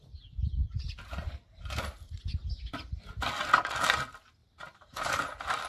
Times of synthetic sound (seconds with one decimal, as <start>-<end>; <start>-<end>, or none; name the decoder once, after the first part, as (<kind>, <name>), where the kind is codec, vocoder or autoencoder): 0.6-3.0 (vocoder, BigVGAN v2); 4.4-5.2